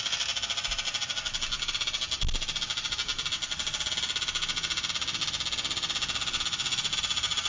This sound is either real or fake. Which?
real